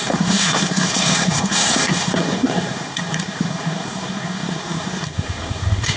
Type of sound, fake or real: fake